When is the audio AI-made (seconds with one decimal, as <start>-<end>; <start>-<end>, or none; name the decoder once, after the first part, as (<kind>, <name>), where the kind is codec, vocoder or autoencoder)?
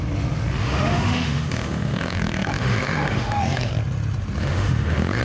0.6-3.7 (autoencoder, DAC-VAE); 4.4-5.2